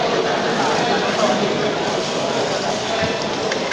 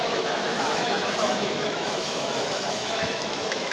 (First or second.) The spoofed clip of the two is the second